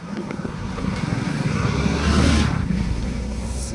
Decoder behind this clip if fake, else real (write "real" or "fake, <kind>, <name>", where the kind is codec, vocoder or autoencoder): fake, codec, SNAC